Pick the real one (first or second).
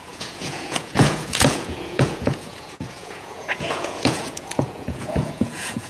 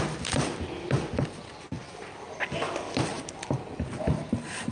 second